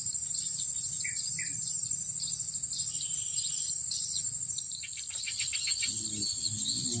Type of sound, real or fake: fake